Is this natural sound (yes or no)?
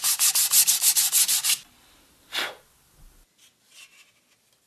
yes